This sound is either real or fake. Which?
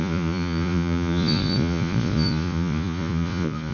fake